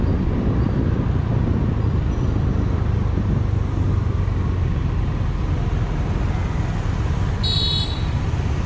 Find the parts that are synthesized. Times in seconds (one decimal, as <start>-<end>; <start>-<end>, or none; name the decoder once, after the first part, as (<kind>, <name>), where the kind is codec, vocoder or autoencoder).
none